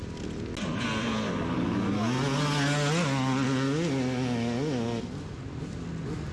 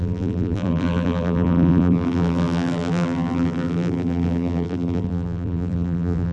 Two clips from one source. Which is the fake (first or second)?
second